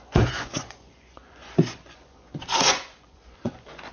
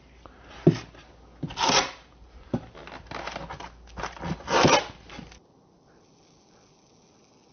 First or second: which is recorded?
second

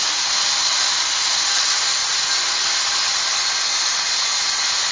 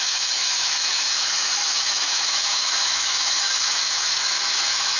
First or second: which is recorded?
first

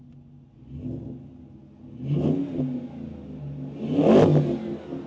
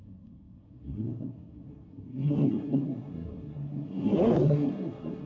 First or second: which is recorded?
first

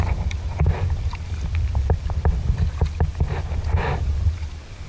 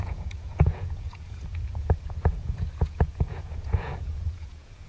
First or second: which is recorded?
first